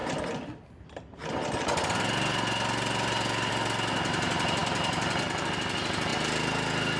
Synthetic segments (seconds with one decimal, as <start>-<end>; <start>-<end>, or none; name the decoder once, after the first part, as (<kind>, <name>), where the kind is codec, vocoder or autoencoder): none